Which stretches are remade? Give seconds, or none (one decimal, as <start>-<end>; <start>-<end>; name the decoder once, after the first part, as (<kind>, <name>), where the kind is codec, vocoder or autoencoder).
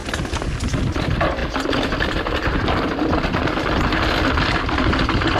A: none